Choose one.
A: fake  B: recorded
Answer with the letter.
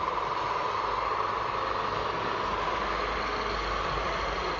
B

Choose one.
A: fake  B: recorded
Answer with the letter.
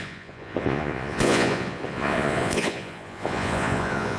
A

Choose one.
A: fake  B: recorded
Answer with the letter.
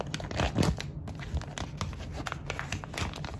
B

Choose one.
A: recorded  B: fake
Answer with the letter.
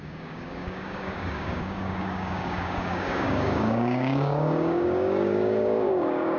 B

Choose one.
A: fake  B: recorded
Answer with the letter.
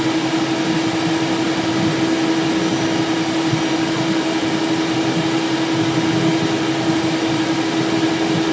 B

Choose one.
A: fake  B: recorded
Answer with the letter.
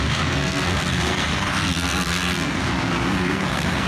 A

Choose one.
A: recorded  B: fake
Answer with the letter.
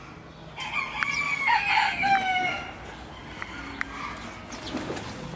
A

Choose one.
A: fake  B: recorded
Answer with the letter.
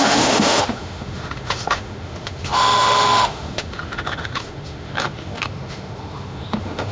A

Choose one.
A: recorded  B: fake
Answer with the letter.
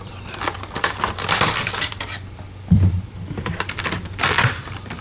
B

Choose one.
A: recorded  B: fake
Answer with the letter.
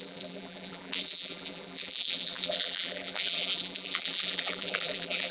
B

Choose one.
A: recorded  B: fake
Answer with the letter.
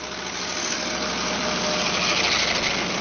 A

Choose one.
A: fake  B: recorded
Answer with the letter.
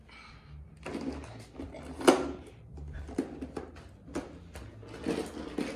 B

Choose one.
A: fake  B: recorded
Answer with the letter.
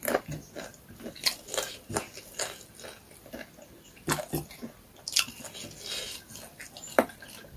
B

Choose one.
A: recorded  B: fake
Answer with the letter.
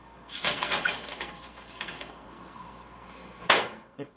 B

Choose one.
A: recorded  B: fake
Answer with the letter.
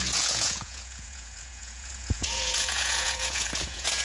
B